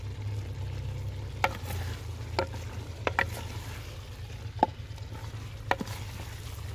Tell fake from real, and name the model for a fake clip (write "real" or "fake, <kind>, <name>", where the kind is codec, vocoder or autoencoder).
real